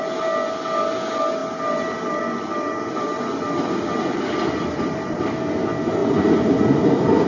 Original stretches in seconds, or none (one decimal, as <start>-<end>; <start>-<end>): 0.0-1.4; 5.2-6.0; 6.5-7.3